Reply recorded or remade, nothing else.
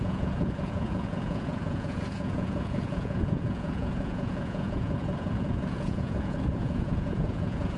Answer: remade